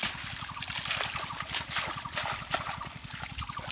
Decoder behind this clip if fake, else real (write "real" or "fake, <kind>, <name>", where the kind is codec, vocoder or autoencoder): real